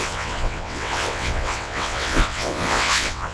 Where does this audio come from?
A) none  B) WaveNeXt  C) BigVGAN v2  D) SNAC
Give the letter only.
B